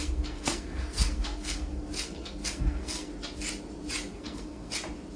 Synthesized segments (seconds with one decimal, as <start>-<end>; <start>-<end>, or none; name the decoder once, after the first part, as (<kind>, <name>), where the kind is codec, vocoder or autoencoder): 0.0-3.1 (codec, SNAC); 4.1-4.7

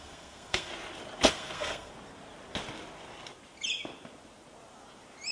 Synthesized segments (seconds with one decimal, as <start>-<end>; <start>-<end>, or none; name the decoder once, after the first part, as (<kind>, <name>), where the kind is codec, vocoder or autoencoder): 0.0-0.7 (codec, SNAC); 1.3-1.9